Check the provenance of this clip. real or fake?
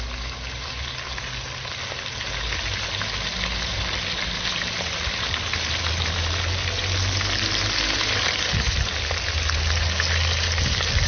real